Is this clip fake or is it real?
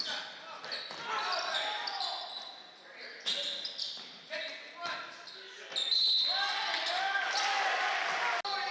real